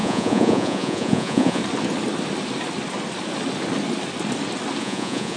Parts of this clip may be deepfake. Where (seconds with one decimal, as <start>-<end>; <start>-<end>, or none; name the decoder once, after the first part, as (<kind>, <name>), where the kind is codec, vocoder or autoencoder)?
0.0-1.6 (vocoder, Vocos); 4.8-5.4